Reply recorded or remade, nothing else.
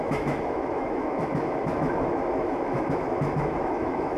remade